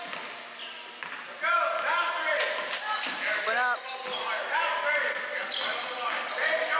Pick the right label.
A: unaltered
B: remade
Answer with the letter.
A